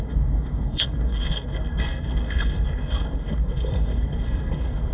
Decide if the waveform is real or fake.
fake